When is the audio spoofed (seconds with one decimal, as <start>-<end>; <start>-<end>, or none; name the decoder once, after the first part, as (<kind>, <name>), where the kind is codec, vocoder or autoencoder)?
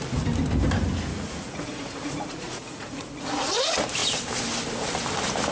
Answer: 1.1-3.2 (vocoder, Vocos)